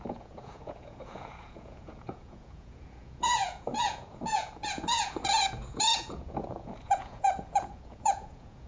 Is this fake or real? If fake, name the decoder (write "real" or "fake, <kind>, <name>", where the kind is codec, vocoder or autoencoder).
fake, vocoder, Vocos